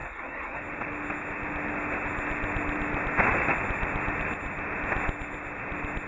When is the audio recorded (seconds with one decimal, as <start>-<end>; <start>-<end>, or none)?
0.6-6.1